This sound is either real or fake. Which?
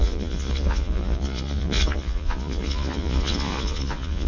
fake